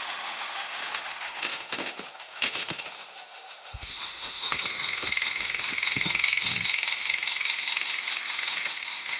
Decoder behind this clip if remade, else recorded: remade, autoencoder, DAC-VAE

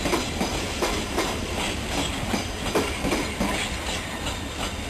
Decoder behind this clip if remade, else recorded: recorded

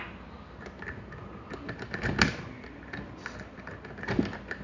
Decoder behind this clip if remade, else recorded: recorded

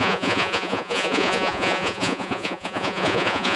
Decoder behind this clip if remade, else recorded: remade, vocoder, Vocos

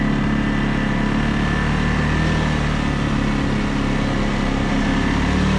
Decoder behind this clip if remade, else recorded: recorded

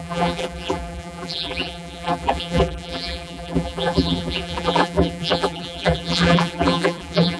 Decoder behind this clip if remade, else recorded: remade, vocoder, BigVGAN v2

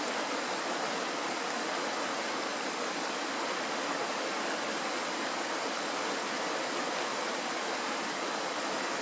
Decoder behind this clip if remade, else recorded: recorded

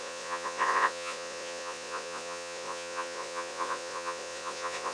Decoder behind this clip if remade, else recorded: remade, vocoder, Vocos